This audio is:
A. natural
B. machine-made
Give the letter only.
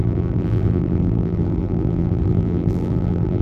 B